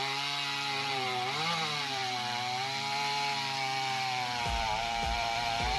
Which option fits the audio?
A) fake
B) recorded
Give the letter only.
A